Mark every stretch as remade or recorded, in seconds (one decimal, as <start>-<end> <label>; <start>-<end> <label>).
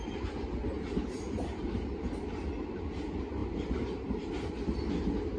0.0-0.6 recorded; 0.6-2.3 remade; 2.3-3.4 recorded; 3.4-4.5 remade; 4.5-5.4 recorded